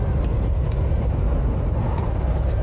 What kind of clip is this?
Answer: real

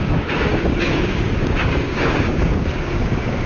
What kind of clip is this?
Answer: fake